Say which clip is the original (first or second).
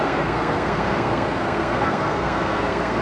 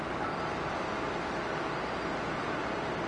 second